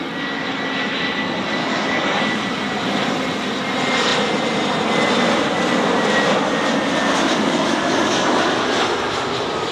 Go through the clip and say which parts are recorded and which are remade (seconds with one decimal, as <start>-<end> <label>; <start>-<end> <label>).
0.0-1.6 recorded; 1.6-2.2 remade; 2.2-7.2 recorded; 7.2-8.6 remade; 8.6-9.7 recorded